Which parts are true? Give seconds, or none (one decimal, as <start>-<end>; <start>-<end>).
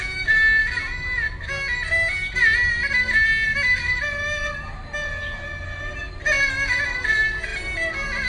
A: 0.0-8.3